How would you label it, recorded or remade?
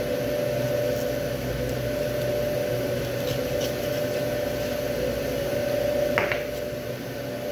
recorded